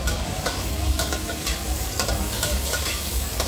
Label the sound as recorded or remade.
remade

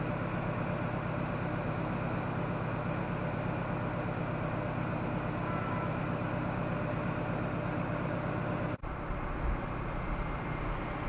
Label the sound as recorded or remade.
recorded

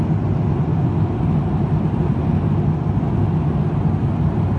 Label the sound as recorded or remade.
recorded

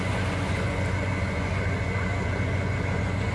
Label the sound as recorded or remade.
remade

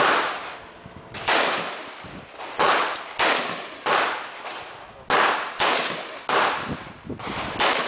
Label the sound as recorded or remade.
recorded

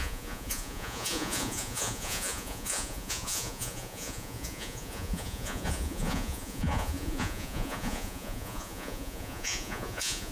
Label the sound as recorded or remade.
remade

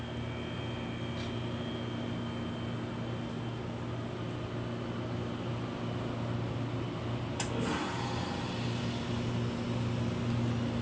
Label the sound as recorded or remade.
recorded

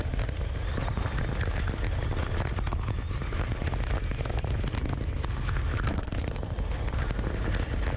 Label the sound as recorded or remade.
recorded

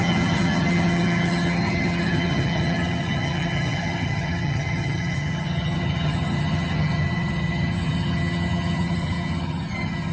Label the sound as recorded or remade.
remade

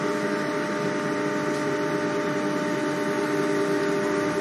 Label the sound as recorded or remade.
recorded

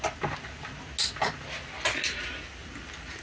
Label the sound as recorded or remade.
recorded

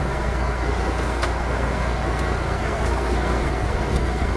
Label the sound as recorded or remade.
remade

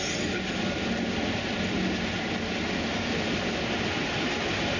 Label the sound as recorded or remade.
recorded